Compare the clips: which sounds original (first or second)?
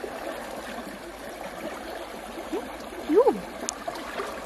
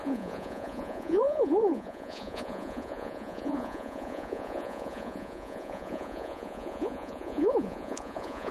first